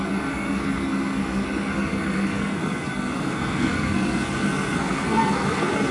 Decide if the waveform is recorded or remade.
remade